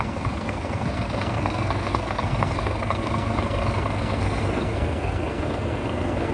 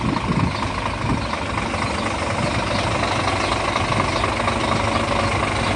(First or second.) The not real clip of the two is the first